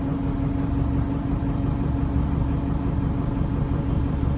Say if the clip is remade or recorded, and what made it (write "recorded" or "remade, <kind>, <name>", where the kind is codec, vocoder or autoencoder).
recorded